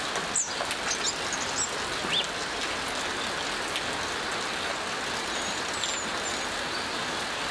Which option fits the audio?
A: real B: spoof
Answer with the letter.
A